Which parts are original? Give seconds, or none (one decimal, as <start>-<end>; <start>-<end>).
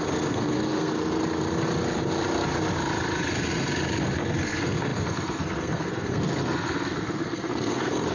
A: 1.2-4.4